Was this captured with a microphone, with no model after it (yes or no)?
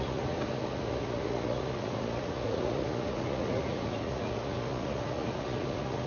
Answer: no